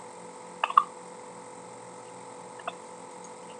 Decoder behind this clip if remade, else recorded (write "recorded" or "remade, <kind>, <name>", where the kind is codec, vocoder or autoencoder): recorded